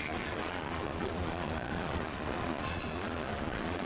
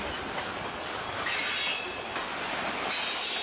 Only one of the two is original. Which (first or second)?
second